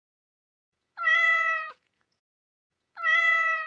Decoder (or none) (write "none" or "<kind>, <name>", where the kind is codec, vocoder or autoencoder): vocoder, Vocos